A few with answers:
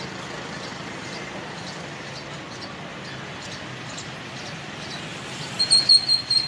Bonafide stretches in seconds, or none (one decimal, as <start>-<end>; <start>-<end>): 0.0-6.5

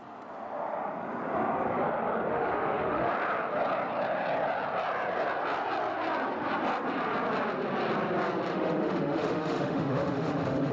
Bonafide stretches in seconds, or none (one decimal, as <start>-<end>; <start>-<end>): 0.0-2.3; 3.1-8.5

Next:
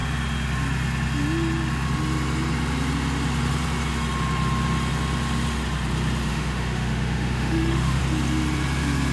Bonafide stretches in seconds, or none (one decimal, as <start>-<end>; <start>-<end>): 0.0-6.3; 8.0-9.1